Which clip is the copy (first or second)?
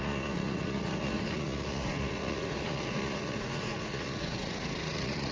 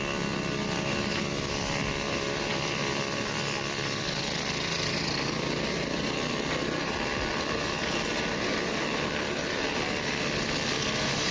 first